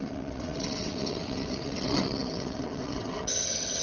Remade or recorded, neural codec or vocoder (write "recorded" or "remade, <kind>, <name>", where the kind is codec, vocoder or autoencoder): remade, vocoder, WaveNeXt